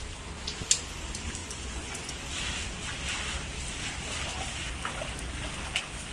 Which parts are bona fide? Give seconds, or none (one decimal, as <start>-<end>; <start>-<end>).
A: 0.0-1.4; 2.1-6.1